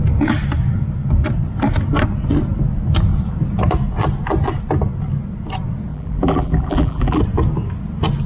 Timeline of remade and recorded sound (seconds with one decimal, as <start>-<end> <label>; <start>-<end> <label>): 0.0-5.9 recorded; 5.9-7.2 remade; 7.2-8.3 recorded